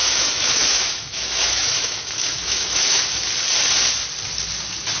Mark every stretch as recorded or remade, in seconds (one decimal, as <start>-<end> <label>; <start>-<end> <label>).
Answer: 0.0-3.0 remade; 3.0-5.0 recorded